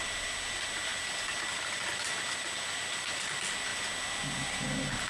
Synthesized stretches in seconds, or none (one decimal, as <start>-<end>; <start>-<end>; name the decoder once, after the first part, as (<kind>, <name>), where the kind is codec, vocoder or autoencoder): none